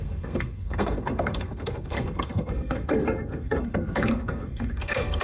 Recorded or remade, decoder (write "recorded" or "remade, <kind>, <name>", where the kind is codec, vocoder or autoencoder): remade, codec, SNAC